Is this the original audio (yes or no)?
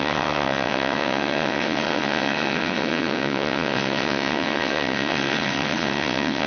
no